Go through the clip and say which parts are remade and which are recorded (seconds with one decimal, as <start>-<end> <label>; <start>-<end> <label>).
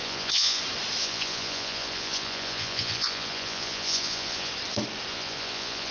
0.0-0.6 remade; 0.6-1.0 recorded; 1.0-4.5 remade; 4.5-5.1 recorded; 5.1-5.9 remade